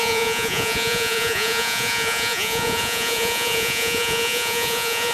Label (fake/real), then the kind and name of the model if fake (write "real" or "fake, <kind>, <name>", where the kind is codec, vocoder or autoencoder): fake, vocoder, Vocos